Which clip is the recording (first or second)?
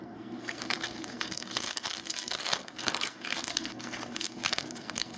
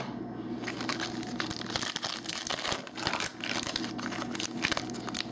second